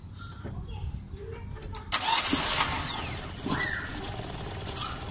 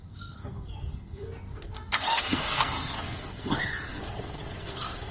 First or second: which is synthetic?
second